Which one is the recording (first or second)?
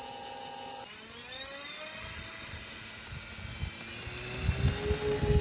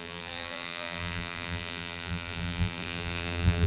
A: first